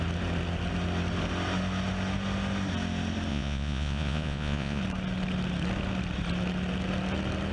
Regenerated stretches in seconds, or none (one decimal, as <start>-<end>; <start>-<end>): 3.3-4.8